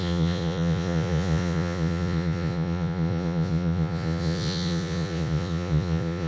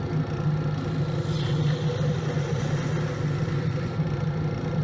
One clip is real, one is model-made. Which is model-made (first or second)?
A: first